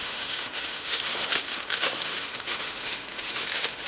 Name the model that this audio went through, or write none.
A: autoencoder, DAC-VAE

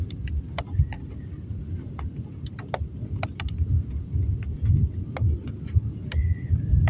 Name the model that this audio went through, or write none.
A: none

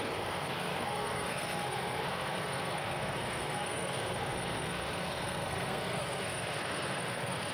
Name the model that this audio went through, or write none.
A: codec, SNAC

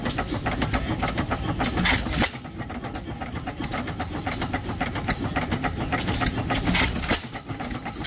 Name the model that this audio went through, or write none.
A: none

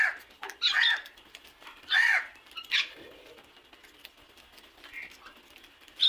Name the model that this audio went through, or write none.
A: none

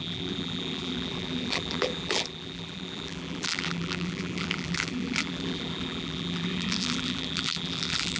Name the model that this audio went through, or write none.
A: vocoder, BigVGAN v2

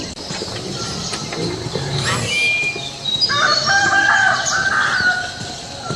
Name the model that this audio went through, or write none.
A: none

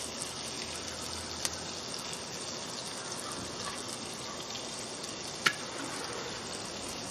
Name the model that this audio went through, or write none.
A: none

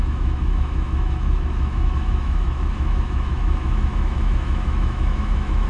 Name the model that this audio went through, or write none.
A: autoencoder, DAC-VAE